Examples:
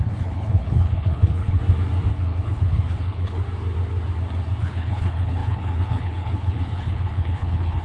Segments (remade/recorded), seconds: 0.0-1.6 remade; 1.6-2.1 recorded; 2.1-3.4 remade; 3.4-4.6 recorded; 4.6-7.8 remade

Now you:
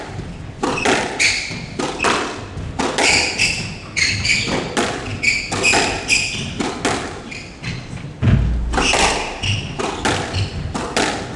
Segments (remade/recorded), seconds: 0.0-11.4 recorded

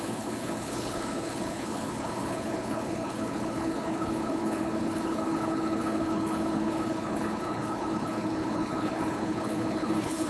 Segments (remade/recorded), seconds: 0.0-10.3 remade

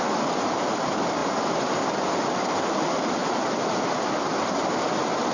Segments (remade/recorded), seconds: 0.0-5.3 recorded

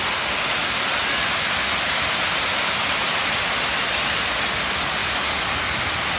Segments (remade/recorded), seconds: 0.0-6.2 recorded

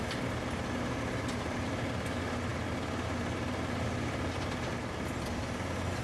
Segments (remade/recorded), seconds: 0.0-6.0 recorded

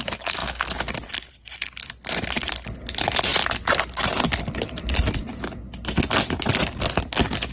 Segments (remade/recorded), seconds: 0.0-7.5 recorded

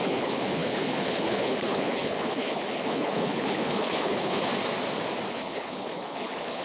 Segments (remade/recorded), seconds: 0.0-4.5 remade; 4.5-5.3 recorded; 5.3-6.6 remade